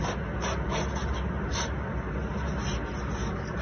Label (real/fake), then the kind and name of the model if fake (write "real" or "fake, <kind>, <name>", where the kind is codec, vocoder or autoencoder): real